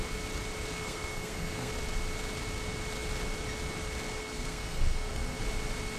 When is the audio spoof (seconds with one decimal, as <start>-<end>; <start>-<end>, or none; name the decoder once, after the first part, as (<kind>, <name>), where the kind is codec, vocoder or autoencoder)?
0.7-1.7 (codec, SNAC); 4.2-5.4